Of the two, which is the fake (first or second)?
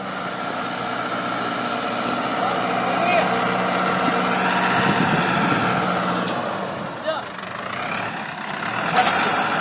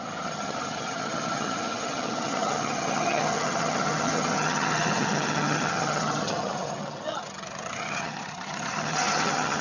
second